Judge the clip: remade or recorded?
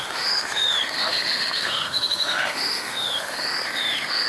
remade